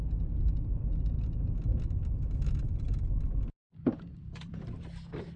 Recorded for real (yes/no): yes